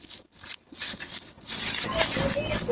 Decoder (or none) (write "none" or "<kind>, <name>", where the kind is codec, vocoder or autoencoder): none